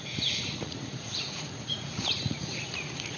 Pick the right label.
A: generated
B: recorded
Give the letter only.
A